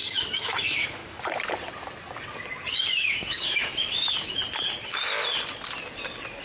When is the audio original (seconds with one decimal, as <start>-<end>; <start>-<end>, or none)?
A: 1.0-2.7; 4.4-6.4